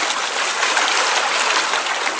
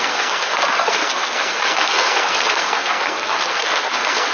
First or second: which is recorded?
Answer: first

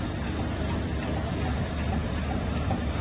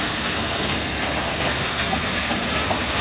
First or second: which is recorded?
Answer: first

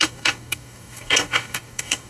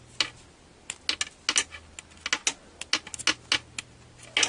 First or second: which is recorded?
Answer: second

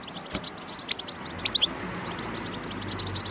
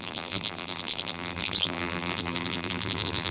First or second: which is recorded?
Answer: first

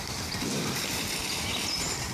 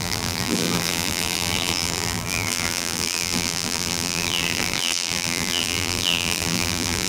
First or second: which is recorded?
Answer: first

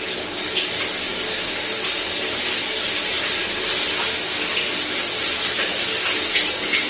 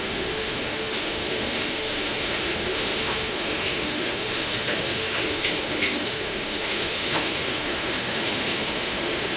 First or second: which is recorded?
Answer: first